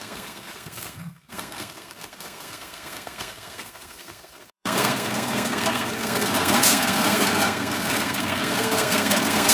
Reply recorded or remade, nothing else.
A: remade